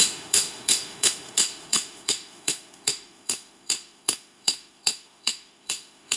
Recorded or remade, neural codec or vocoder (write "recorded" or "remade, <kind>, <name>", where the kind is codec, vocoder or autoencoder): remade, autoencoder, DAC-VAE